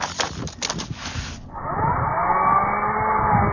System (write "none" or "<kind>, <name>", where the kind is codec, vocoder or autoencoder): none